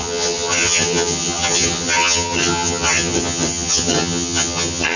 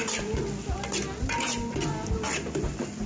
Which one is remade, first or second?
first